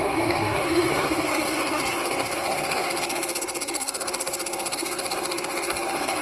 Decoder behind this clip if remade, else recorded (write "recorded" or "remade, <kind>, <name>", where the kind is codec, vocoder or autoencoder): remade, codec, SNAC